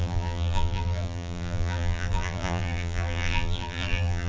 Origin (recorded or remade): remade